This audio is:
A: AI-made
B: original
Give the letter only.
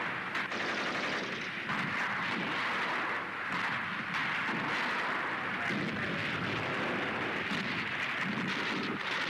B